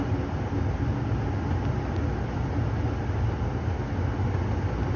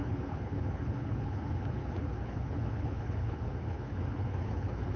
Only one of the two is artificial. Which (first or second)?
second